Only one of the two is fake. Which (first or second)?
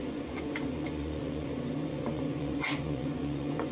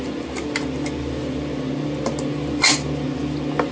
first